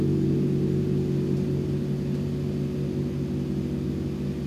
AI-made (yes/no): no